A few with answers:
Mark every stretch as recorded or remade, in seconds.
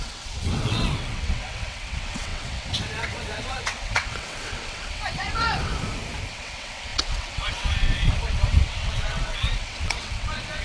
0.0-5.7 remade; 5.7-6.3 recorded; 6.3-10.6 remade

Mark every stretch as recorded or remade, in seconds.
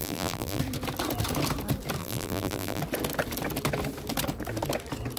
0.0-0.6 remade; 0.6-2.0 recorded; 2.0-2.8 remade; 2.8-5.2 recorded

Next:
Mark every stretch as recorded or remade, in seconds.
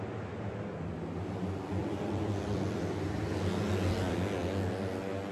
0.0-1.8 recorded; 1.8-3.3 remade; 3.3-5.3 recorded